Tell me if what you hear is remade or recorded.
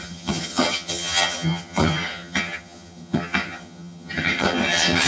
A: remade